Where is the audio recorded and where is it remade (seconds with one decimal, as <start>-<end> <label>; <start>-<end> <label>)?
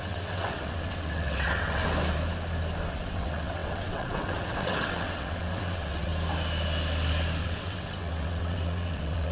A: 0.0-1.8 remade; 1.8-2.9 recorded; 2.9-6.1 remade; 6.1-7.4 recorded; 7.4-9.3 remade